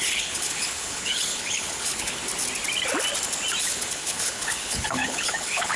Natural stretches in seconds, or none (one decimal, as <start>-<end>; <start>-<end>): 2.2-3.6